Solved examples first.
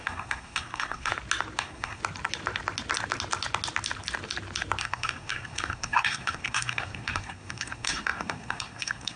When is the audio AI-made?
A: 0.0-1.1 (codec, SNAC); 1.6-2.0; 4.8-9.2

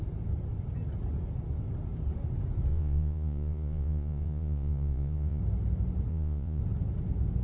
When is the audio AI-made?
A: 2.7-5.4 (vocoder, Vocos); 6.1-6.6

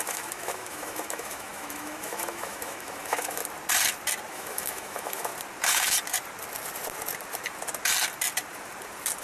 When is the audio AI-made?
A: 0.0-3.4 (autoencoder, DAC-VAE); 4.3-5.3

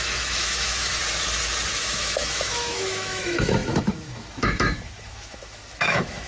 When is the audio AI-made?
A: 0.0-1.0 (autoencoder, DAC-VAE); 1.8-6.3